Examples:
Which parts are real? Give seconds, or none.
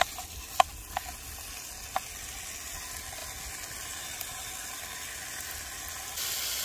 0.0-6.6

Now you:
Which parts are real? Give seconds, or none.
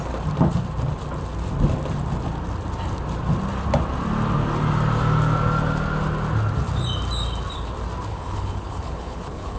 0.0-8.1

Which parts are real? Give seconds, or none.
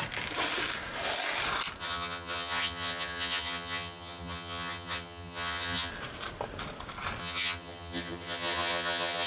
0.0-1.8; 5.9-7.2